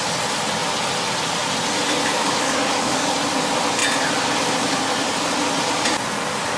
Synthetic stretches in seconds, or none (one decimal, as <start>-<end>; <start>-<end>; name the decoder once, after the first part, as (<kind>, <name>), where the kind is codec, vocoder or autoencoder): 2.1-3.1 (codec, DAC)